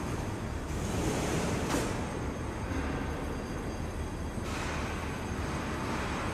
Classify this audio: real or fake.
real